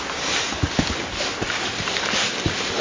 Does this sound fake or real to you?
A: real